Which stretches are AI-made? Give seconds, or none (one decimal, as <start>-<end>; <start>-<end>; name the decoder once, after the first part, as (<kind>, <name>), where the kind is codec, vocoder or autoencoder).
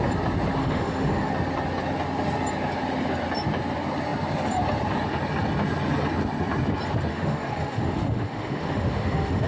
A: 0.6-1.3 (autoencoder, DAC-VAE); 7.1-9.5